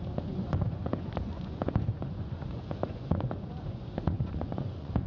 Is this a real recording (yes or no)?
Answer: no